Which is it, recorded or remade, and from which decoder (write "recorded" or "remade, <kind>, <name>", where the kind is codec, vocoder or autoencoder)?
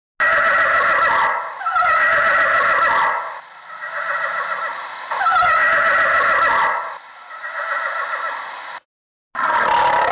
recorded